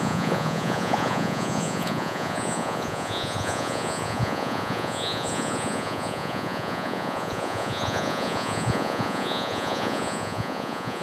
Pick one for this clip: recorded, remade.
remade